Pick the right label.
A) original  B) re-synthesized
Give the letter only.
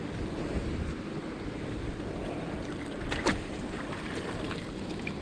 A